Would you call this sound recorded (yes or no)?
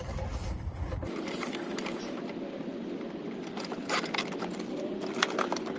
yes